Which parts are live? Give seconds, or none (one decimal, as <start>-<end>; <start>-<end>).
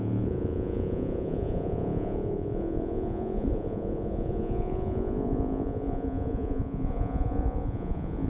none